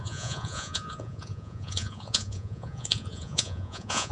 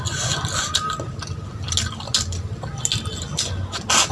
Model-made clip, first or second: first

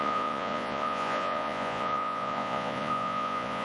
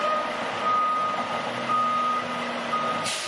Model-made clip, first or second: first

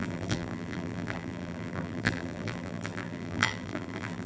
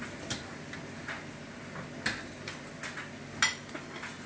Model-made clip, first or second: first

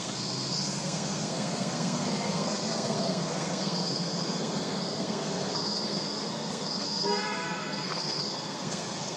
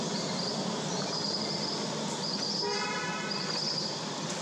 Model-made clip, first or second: first